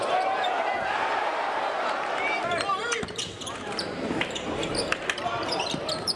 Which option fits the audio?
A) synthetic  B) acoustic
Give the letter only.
A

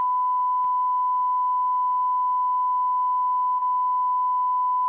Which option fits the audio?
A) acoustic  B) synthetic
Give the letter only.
A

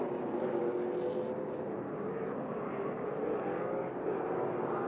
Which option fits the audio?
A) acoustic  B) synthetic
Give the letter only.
A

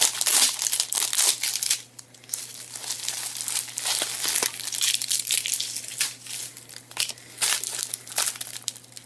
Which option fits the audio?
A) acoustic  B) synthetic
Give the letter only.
A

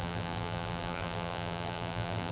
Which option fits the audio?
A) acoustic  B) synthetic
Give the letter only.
B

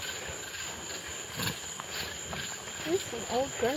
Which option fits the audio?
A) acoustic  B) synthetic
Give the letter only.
A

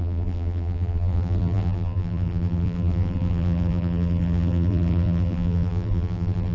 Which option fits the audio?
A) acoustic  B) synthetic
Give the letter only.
B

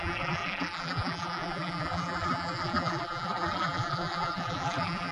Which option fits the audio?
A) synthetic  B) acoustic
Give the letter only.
A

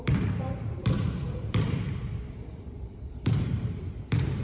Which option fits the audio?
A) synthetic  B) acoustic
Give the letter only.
A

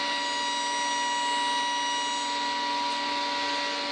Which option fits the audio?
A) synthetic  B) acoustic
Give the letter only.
B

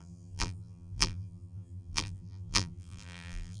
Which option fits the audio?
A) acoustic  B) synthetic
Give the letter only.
B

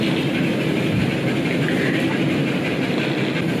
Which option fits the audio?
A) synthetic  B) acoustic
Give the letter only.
B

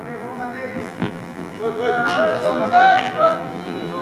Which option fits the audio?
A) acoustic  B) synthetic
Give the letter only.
B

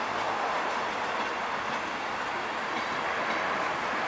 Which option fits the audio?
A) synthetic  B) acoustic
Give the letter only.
B